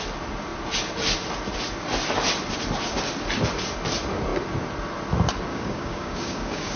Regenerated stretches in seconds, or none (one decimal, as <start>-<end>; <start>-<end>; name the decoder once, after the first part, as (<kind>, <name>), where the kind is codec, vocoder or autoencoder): 5.5-6.8 (codec, DAC)